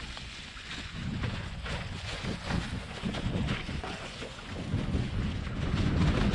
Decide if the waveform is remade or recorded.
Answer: remade